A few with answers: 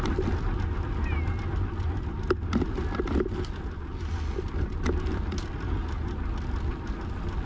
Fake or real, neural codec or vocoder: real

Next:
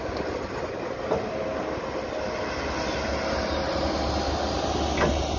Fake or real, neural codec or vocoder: real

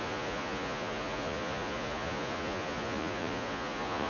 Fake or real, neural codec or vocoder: fake, vocoder, Vocos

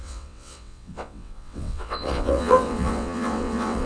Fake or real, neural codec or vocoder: fake, vocoder, WaveNeXt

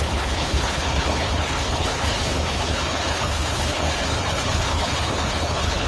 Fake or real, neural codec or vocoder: fake, codec, HILCodec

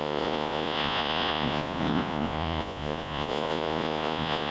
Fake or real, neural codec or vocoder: fake, vocoder, Vocos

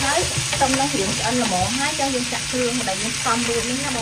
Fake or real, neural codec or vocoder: real